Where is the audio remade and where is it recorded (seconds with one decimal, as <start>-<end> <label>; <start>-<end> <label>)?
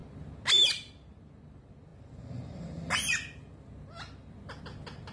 0.0-5.1 recorded